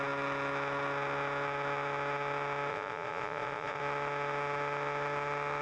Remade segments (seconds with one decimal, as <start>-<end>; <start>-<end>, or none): 2.7-3.8